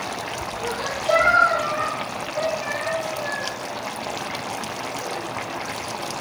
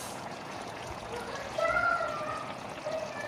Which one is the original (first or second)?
first